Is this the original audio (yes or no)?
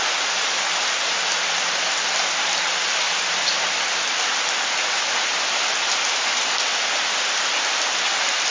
yes